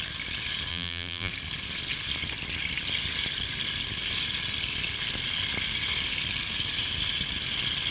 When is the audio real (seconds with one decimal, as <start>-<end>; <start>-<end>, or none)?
0.0-0.7; 1.3-7.9